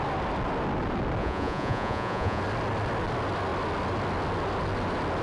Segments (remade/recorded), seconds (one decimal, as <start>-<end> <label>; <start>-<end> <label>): 0.0-1.2 recorded; 1.2-2.4 remade; 2.4-5.2 recorded

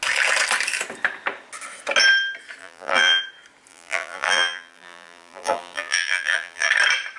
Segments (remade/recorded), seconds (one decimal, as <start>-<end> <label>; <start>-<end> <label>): 0.0-2.6 recorded; 2.6-3.2 remade; 3.2-3.7 recorded; 3.7-6.7 remade; 6.7-7.2 recorded

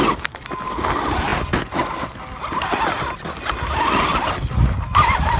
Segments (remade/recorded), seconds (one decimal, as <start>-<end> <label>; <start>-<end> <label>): 0.0-5.4 recorded

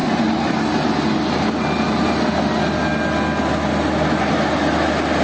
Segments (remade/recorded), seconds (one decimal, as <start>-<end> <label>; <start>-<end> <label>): 0.0-5.2 recorded